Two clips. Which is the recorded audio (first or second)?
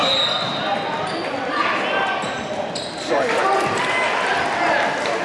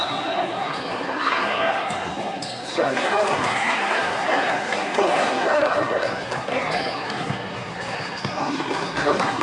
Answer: first